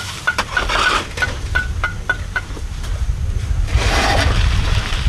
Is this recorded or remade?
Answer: remade